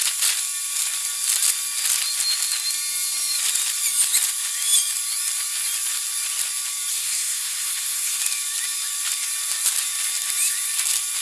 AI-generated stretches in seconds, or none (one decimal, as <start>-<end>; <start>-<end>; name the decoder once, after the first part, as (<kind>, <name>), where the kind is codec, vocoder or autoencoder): 6.9-8.2 (codec, SNAC)

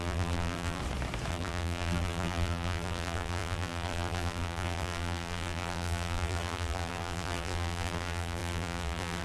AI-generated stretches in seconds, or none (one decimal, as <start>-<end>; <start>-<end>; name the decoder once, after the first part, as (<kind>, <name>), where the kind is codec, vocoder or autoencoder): 0.0-0.8 (vocoder, BigVGAN v2); 1.3-9.2

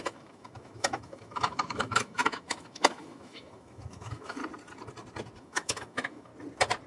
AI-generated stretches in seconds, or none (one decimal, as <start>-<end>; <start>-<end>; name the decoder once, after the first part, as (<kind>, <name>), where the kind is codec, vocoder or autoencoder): 0.0-4.4 (autoencoder, DAC-VAE); 5.4-6.3

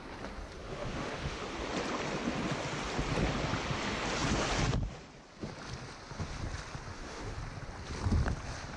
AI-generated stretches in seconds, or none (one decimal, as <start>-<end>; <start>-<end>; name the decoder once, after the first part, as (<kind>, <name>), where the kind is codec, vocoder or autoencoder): 0.6-1.4 (autoencoder, DAC-VAE); 6.9-7.4

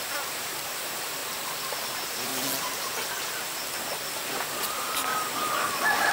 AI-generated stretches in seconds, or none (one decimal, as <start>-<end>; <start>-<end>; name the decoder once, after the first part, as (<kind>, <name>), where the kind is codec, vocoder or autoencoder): 0.0-2.3 (vocoder, BigVGAN v2); 4.7-6.1

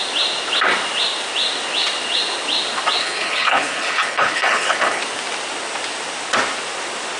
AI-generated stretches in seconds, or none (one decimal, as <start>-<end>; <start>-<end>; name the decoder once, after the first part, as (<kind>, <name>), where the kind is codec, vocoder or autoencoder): 3.0-5.0 (codec, HILCodec)